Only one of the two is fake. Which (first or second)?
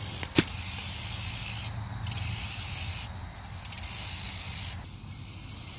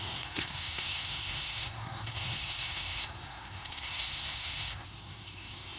second